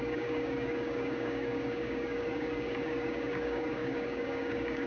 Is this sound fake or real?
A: fake